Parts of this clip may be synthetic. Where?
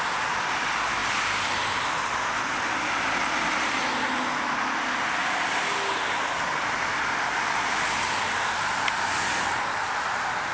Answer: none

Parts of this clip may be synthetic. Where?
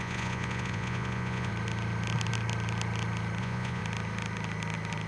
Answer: 0.0-1.5 (vocoder, Vocos); 3.4-3.8